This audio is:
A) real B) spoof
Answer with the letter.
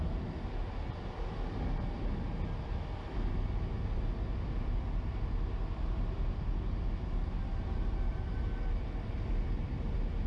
A